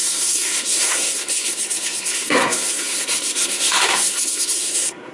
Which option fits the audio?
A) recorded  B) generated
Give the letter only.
B